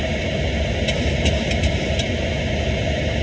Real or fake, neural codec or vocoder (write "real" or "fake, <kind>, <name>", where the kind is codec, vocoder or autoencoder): real